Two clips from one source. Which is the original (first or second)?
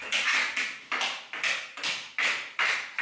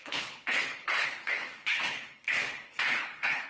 first